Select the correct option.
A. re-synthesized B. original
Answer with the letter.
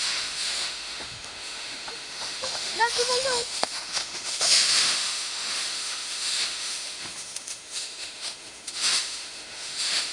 A